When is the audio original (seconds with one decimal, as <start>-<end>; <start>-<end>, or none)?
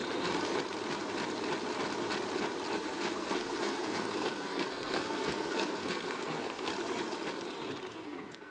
0.0-2.7; 6.7-7.9